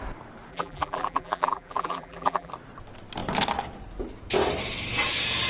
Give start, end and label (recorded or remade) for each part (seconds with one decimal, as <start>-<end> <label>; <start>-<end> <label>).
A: 0.0-0.5 recorded; 0.5-2.5 remade; 2.5-5.5 recorded